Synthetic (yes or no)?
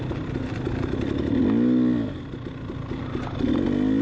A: no